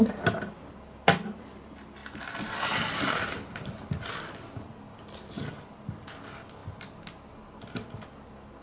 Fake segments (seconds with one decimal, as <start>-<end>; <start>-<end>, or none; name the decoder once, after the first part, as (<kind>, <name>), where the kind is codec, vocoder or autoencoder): none